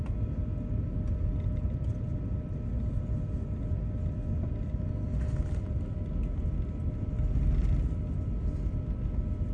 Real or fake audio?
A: real